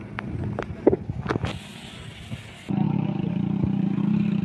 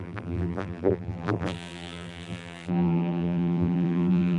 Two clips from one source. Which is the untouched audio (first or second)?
first